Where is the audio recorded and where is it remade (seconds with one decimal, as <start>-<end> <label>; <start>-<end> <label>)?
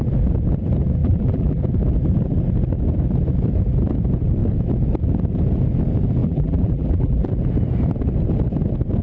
0.0-1.0 recorded; 1.0-1.6 remade; 1.6-6.2 recorded; 6.2-7.3 remade; 7.3-9.0 recorded